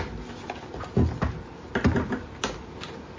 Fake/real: real